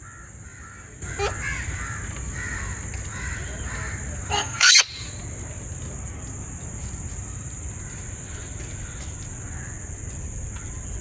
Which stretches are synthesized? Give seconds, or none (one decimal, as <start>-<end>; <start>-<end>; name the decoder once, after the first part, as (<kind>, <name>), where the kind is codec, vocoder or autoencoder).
4.3-4.8 (codec, SNAC)